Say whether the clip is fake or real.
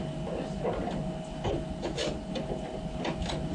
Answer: real